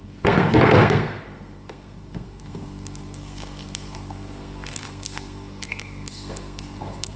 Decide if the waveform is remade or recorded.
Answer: remade